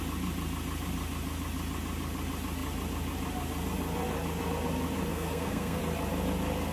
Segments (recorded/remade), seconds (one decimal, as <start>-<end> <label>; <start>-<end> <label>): 0.0-5.1 recorded; 5.1-5.8 remade; 5.8-6.7 recorded

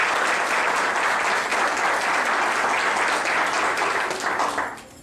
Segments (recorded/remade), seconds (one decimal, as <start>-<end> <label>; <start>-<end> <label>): 0.0-5.0 recorded

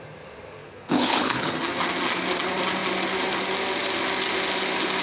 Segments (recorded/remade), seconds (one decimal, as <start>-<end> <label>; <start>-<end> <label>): 0.0-0.6 recorded; 0.6-1.5 remade; 1.5-5.0 recorded

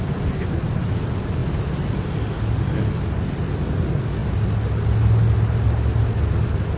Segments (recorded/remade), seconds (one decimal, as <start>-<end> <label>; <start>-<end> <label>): 0.0-6.8 recorded

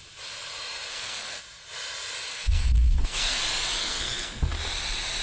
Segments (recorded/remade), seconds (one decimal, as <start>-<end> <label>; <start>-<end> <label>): 0.0-0.9 recorded; 0.9-1.4 remade; 1.4-2.3 recorded; 2.3-3.4 remade; 3.4-3.8 recorded; 3.8-4.5 remade; 4.5-5.2 recorded

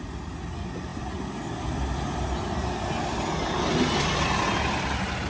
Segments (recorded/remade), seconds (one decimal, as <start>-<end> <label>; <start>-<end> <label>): 0.0-5.3 recorded

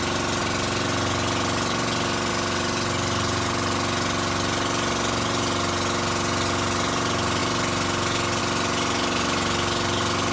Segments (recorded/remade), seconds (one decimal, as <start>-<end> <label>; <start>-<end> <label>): 0.0-10.3 recorded

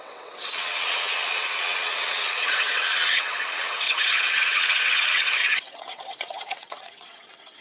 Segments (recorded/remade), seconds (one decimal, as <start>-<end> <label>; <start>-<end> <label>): 0.0-7.6 remade